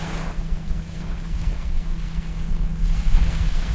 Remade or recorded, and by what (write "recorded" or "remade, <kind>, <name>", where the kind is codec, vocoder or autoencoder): remade, codec, SNAC